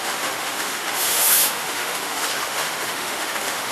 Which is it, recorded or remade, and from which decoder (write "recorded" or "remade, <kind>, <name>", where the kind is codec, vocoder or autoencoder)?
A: remade, autoencoder, DAC-VAE